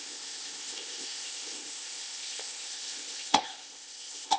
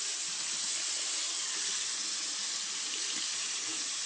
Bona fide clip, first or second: second